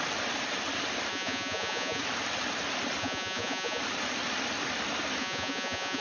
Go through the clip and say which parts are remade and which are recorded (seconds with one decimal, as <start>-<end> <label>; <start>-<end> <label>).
0.0-1.1 recorded; 1.1-2.0 remade; 2.0-3.0 recorded; 3.0-3.8 remade; 3.8-5.2 recorded; 5.2-6.0 remade